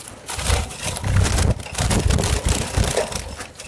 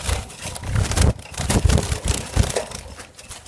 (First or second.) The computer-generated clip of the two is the second